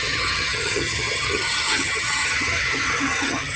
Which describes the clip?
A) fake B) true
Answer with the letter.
A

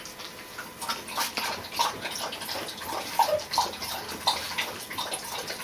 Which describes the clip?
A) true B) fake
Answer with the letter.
A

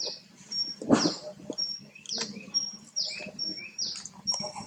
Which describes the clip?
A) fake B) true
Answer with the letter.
A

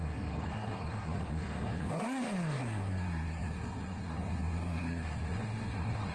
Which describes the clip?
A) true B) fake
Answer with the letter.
B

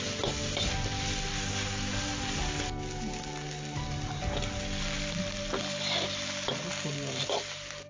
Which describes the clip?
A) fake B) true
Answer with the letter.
B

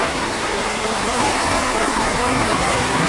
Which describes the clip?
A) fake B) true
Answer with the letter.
A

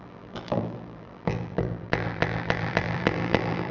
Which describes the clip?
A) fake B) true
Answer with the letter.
A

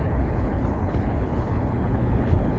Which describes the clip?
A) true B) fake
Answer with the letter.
B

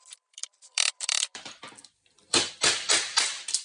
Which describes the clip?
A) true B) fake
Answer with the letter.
B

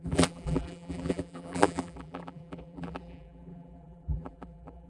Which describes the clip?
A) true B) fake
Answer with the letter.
B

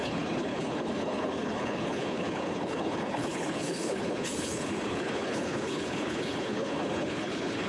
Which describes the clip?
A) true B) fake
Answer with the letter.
B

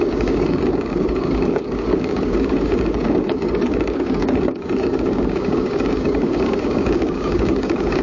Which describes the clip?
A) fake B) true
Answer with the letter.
A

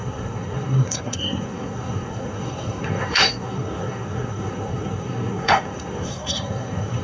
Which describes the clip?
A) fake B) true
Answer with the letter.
A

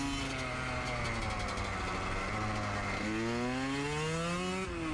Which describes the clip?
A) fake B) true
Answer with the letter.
B